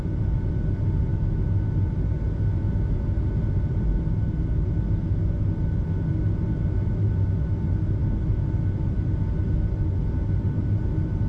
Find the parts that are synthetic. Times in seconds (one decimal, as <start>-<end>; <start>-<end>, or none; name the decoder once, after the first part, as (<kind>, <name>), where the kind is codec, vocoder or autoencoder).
1.1-1.6 (autoencoder, DAC-VAE)